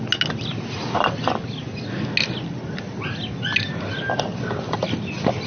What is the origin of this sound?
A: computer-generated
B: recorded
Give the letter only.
B